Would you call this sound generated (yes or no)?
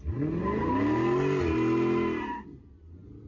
no